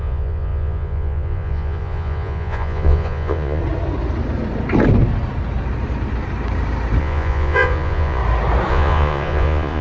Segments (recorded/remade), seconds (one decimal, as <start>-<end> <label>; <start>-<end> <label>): 0.0-3.6 remade; 3.6-7.0 recorded; 7.0-8.2 remade; 8.2-8.7 recorded; 8.7-9.8 remade